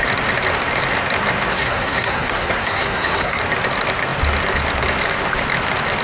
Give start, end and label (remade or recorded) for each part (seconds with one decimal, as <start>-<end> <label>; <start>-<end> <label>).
0.0-1.5 recorded; 1.5-3.4 remade; 3.4-6.0 recorded